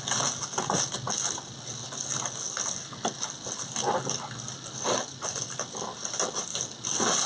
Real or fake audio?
real